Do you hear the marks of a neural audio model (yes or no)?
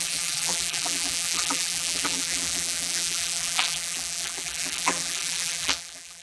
yes